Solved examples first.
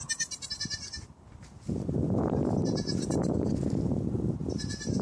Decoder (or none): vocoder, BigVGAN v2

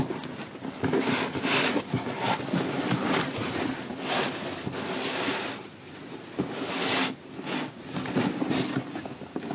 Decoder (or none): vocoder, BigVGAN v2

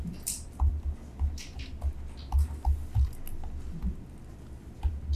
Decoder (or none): none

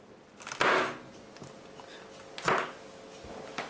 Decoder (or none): none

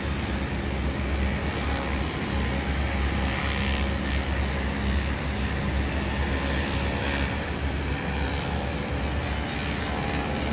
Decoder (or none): none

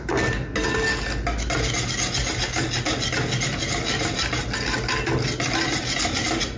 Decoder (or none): none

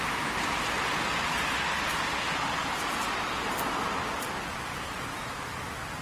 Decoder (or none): none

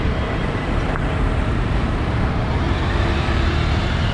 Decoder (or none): vocoder, BigVGAN v2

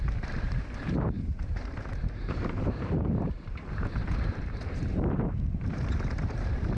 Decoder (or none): vocoder, BigVGAN v2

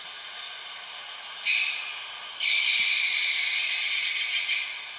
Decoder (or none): none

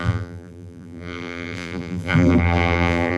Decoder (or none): vocoder, BigVGAN v2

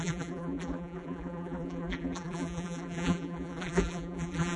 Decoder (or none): vocoder, BigVGAN v2